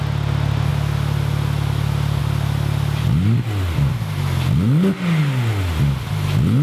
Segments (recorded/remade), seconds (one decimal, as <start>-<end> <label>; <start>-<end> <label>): 0.0-6.6 recorded